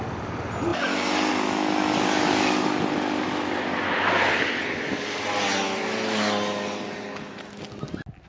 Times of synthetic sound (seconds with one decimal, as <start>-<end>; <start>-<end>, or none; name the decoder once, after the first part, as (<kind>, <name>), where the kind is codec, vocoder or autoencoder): none